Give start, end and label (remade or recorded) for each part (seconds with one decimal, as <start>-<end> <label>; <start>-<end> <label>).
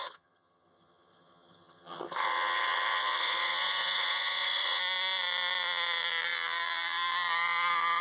0.0-4.8 remade; 4.8-8.0 recorded